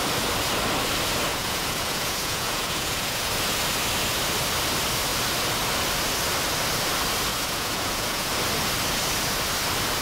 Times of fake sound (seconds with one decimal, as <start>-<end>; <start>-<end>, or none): 1.3-3.3; 7.3-8.3